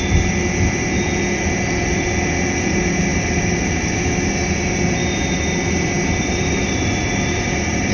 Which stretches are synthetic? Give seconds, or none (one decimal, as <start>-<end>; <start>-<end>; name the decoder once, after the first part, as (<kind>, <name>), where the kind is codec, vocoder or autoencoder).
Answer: none